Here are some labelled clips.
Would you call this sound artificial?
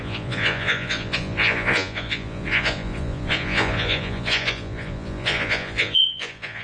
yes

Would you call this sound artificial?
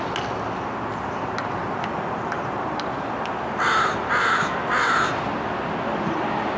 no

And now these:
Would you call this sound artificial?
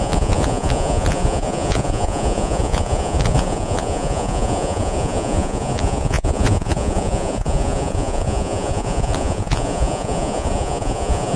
yes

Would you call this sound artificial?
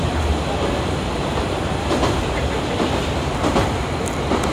no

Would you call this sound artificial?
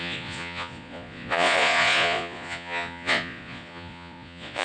yes